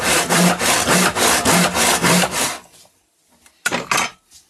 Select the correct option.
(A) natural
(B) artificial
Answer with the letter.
A